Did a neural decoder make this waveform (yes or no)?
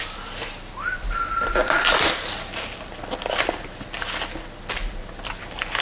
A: no